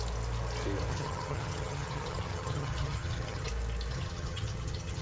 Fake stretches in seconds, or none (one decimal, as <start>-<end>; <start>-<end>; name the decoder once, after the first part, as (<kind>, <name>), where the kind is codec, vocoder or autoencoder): 0.9-3.5 (vocoder, HiFi-GAN); 3.9-5.0